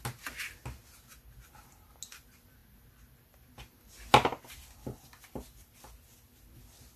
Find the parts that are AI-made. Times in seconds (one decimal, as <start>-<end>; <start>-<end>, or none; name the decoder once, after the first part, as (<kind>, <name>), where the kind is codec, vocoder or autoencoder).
none